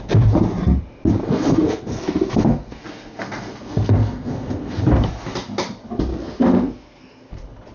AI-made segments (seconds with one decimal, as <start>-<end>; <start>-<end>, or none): 1.2-4.8; 6.1-7.3

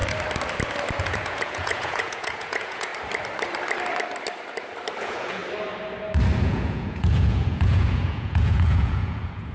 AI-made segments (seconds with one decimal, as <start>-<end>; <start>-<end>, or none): 1.0-2.9; 5.0-5.4; 6.4-9.5